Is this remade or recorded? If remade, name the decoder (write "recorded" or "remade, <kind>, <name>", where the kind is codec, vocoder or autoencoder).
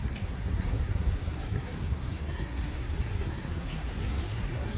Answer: remade, codec, SNAC